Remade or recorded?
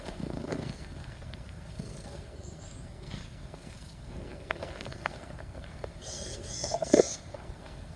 remade